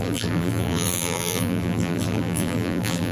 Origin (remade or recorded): remade